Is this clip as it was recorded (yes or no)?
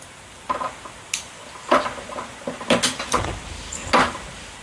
yes